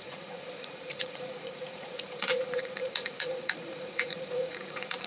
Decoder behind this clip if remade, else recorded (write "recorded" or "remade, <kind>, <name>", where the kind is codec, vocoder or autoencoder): remade, vocoder, Vocos